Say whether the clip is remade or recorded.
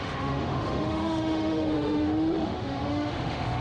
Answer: remade